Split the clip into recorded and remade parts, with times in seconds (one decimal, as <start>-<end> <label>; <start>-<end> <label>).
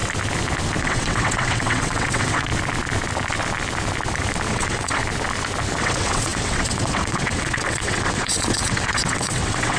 0.0-0.8 recorded; 0.8-2.5 remade; 2.5-4.5 recorded; 4.5-5.0 remade; 5.0-5.8 recorded; 5.8-9.8 remade